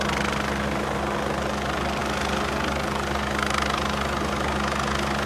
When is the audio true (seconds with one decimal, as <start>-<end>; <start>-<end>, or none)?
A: 0.0-5.3